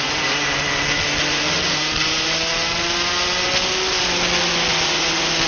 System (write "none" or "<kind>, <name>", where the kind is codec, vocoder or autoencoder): none